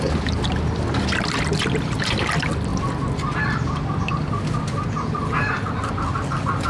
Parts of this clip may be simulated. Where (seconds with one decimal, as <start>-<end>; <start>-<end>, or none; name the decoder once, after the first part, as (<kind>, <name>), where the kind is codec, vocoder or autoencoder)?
none